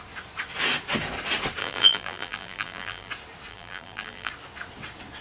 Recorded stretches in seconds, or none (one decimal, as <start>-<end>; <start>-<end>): 0.0-1.6; 3.1-3.5; 4.3-5.2